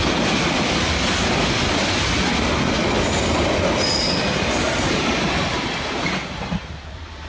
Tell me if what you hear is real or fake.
real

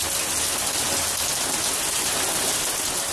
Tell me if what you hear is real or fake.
real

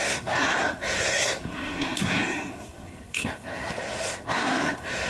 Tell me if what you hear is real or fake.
fake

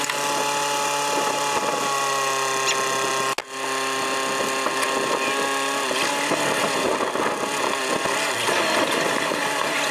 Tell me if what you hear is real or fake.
real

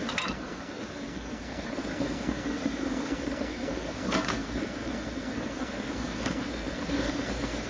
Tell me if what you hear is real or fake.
fake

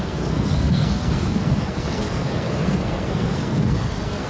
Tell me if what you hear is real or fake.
fake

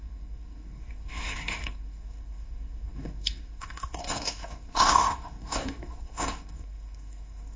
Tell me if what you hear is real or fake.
fake